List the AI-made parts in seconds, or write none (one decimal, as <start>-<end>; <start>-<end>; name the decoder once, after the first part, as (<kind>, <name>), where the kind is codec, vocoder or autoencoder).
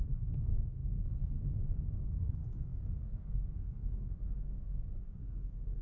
0.0-5.8 (codec, SNAC)